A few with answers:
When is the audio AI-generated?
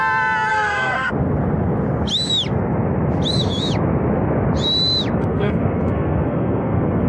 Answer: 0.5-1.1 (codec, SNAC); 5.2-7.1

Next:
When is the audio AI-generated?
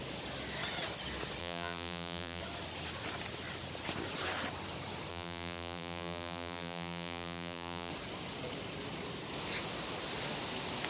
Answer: 1.4-2.4 (vocoder, BigVGAN v2); 5.1-7.9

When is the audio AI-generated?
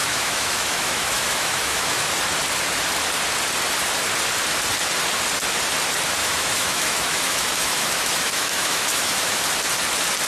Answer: 0.0-2.1 (autoencoder, DAC-VAE); 6.2-9.4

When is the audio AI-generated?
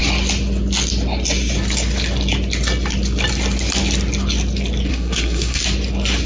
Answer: 4.9-5.6 (codec, SNAC)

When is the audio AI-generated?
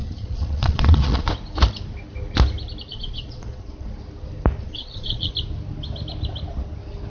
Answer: 0.0-1.3 (vocoder, Vocos); 2.9-3.9; 4.6-5.3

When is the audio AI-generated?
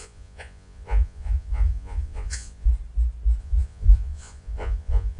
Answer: 0.0-2.7 (vocoder, Vocos); 3.4-5.2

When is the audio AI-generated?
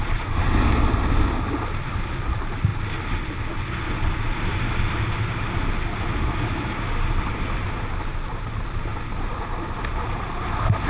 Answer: none